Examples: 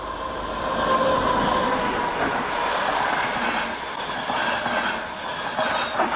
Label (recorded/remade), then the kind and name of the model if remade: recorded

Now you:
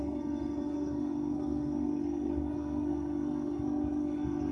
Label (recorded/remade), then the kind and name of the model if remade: remade, codec, SNAC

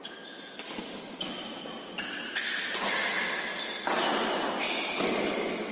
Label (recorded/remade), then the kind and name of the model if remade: recorded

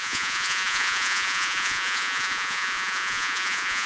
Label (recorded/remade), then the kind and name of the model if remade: remade, vocoder, Vocos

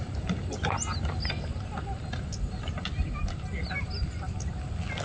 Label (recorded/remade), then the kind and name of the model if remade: recorded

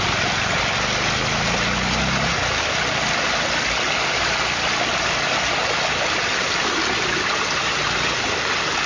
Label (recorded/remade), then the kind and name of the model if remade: recorded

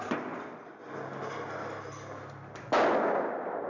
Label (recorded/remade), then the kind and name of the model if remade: recorded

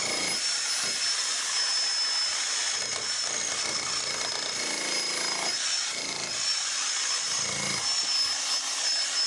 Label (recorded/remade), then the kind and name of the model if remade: recorded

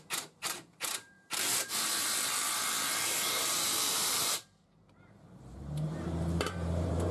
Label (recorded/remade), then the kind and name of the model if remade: remade, vocoder, BigVGAN v2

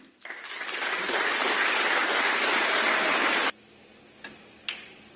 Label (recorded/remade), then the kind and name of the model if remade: recorded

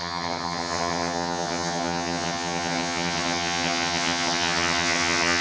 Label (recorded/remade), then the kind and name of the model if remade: remade, vocoder, HiFi-GAN